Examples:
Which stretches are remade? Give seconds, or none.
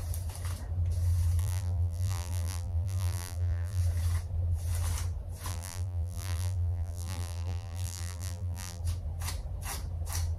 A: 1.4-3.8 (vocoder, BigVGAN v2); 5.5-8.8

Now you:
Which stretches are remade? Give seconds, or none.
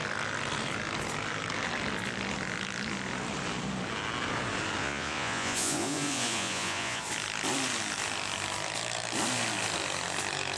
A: 4.8-7.0 (vocoder, Vocos)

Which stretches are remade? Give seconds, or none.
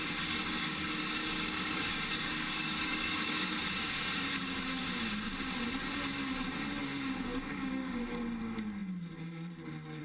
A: 0.0-4.8 (codec, DAC); 6.8-10.0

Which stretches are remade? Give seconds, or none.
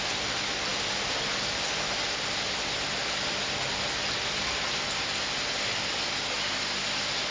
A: none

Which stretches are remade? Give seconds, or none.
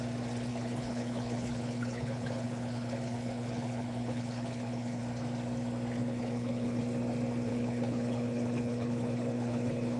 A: 0.5-5.0 (codec, HILCodec); 6.0-6.8; 7.5-10.0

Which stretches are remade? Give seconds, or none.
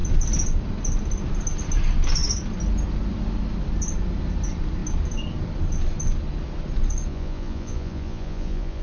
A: 7.1-8.8 (vocoder, Vocos)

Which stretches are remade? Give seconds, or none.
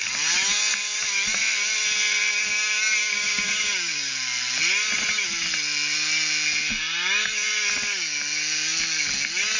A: 2.3-4.1 (codec, DAC)